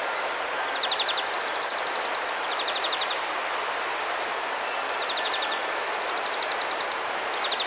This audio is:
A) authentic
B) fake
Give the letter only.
A